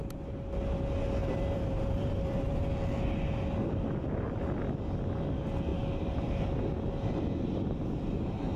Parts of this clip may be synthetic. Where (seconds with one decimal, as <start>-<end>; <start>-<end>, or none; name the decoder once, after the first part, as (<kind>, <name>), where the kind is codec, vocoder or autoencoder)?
1.2-2.7 (vocoder, BigVGAN v2)